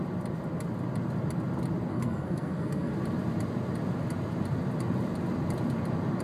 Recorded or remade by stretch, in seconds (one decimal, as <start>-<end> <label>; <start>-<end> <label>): 0.0-1.9 recorded; 1.9-2.9 remade; 2.9-6.2 recorded